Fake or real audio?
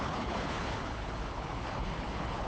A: fake